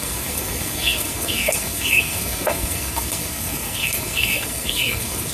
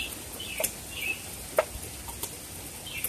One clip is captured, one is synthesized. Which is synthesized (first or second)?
first